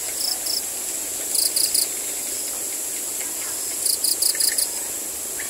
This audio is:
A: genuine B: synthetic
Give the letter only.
A